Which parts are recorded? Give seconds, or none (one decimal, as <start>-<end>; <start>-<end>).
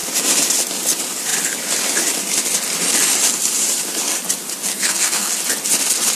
0.0-4.7; 5.3-6.2